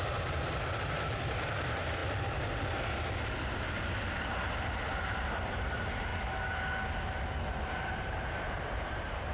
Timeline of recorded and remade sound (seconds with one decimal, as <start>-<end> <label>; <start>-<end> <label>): 0.0-6.1 remade; 6.1-7.6 recorded; 7.6-9.3 remade